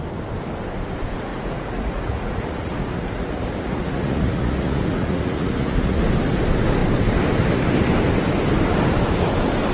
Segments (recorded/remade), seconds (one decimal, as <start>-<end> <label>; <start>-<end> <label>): 0.0-1.3 recorded; 1.3-6.0 remade; 6.0-9.7 recorded